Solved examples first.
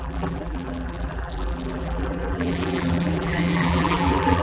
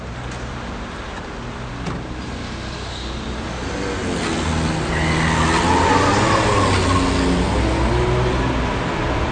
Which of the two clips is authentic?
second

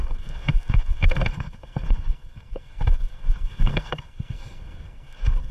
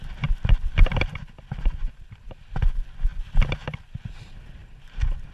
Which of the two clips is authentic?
second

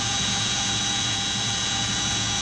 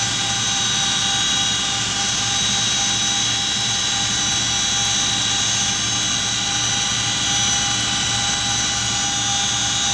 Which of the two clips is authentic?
second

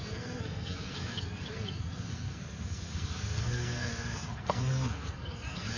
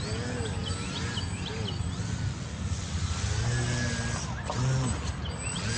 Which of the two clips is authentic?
second